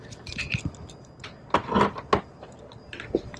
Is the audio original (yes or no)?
yes